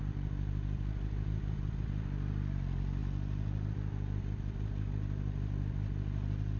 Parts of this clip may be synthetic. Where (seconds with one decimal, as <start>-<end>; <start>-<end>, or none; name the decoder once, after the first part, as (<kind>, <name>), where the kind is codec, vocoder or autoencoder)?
none